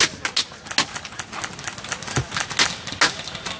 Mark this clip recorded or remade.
recorded